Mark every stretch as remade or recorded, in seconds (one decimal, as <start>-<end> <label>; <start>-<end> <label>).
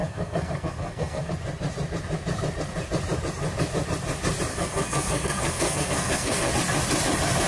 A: 0.0-1.3 remade; 1.3-4.5 recorded; 4.5-6.5 remade; 6.5-7.5 recorded